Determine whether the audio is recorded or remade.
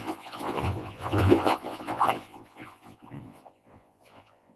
remade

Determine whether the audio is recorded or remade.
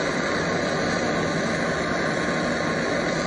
recorded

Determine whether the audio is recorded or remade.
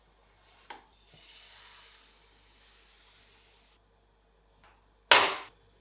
recorded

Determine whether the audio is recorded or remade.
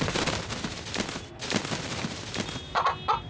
recorded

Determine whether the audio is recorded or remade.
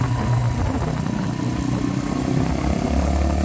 recorded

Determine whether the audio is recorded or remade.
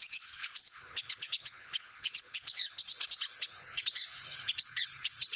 remade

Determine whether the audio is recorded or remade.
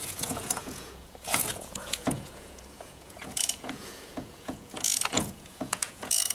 remade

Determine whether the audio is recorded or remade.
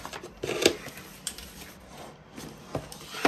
recorded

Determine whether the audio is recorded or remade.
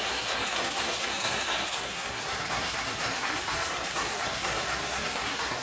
remade